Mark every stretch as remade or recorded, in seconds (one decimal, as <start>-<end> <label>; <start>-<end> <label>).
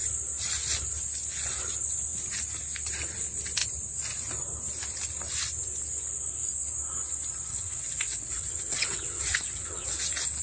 0.0-7.5 recorded; 7.5-10.0 remade; 10.0-10.4 recorded